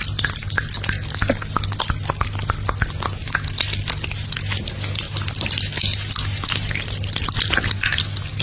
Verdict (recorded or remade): recorded